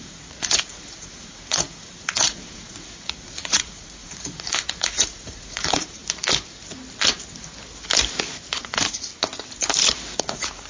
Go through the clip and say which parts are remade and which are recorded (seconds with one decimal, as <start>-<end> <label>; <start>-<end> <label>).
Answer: 0.0-6.0 remade; 6.0-8.6 recorded; 8.6-9.1 remade; 9.1-10.2 recorded; 10.2-10.7 remade